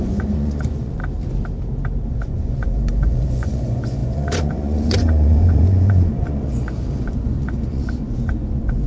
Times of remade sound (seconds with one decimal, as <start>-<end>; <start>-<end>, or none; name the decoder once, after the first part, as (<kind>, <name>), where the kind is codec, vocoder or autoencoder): 0.0-1.0 (vocoder, Vocos); 2.1-8.9